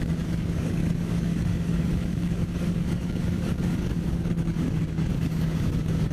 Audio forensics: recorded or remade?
remade